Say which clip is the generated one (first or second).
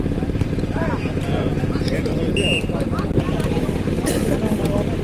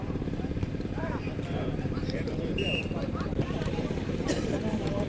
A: second